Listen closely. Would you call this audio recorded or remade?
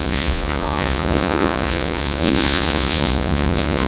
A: remade